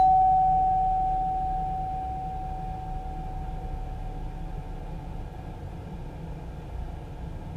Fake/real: real